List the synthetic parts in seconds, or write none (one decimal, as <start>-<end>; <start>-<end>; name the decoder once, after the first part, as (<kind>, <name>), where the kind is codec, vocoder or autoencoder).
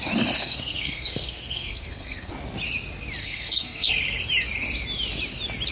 0.4-2.3 (codec, SNAC); 3.2-3.9